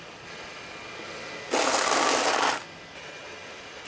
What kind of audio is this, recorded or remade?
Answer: recorded